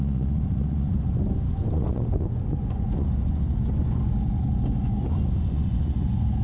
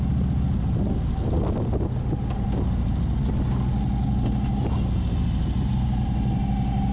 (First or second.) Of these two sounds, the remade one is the first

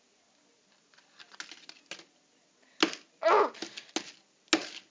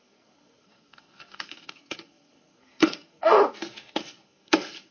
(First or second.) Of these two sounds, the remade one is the second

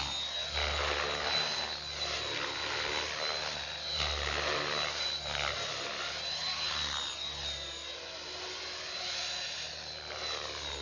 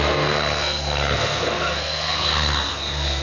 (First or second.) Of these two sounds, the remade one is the second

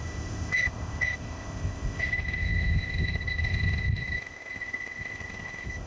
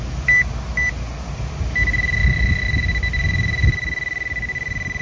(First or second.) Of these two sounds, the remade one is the first